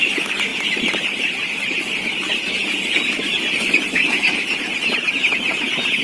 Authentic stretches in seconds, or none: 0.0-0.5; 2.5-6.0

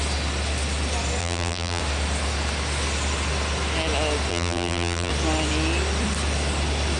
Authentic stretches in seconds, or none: 0.0-1.2; 1.8-4.3; 5.1-7.0

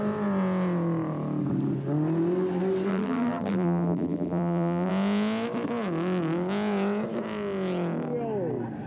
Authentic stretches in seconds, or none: 0.0-2.9; 4.9-8.9

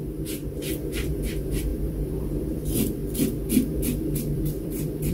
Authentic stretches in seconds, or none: 0.4-1.1